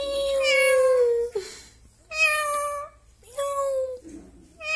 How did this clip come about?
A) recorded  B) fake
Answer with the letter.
A